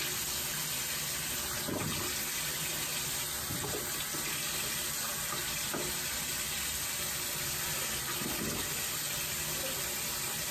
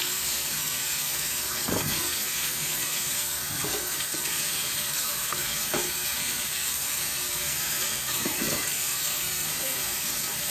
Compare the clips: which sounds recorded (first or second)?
first